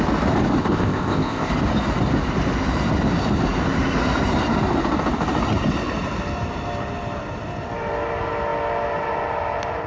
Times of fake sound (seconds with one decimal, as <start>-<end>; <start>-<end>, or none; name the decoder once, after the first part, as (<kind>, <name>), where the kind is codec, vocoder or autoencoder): 0.6-1.5 (codec, ZipCodec)